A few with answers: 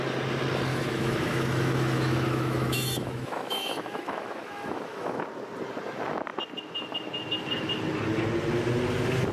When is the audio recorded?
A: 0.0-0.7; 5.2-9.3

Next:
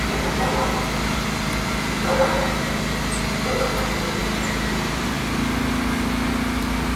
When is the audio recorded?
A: 0.0-7.0

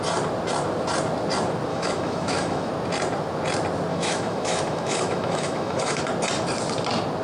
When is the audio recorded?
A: 0.0-1.7; 2.7-3.9; 6.0-7.2

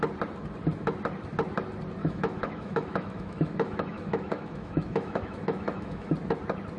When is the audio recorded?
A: 0.0-2.0; 6.1-6.8

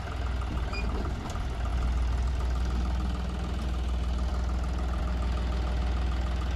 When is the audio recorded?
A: 0.0-6.6